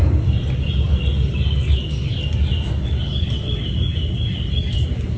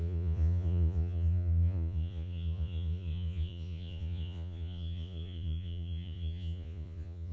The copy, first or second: second